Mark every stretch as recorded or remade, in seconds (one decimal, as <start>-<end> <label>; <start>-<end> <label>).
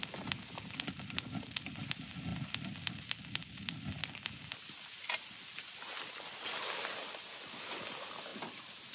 0.0-8.9 recorded